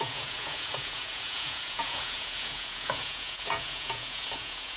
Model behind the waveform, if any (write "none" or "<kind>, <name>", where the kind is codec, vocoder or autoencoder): vocoder, Vocos